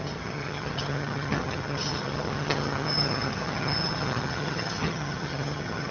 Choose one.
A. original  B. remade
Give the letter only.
B